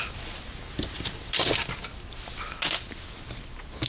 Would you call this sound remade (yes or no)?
no